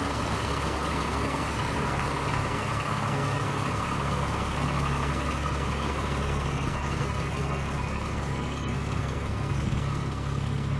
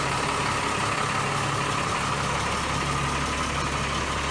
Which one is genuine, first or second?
second